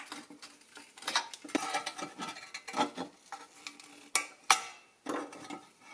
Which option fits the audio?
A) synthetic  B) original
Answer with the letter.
B